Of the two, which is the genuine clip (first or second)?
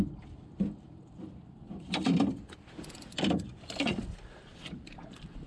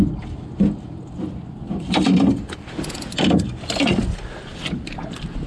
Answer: second